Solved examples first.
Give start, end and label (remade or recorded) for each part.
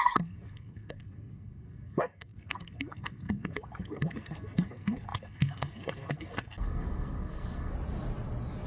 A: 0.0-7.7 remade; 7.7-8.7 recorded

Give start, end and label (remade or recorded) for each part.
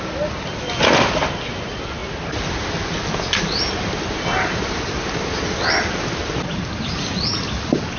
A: 0.0-8.0 recorded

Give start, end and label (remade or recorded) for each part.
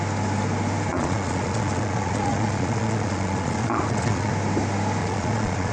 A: 0.0-0.9 recorded; 0.9-4.3 remade; 4.3-5.0 recorded; 5.0-5.7 remade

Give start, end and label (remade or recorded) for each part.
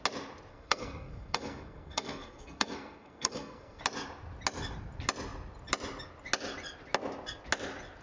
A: 0.0-0.5 recorded; 0.5-3.8 remade; 3.8-8.0 recorded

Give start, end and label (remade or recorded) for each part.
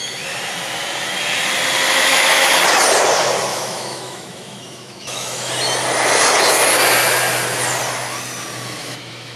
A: 0.0-1.9 recorded; 1.9-2.5 remade; 2.5-3.5 recorded; 3.5-5.5 remade; 5.5-8.8 recorded; 8.8-9.4 remade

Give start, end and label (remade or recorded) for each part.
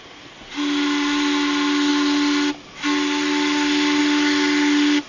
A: 0.0-5.1 recorded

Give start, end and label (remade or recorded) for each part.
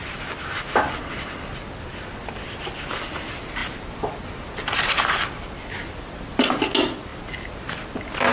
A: 0.0-8.3 recorded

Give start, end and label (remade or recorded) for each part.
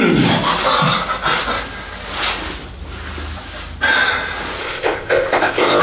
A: 0.0-4.6 recorded; 4.6-5.8 remade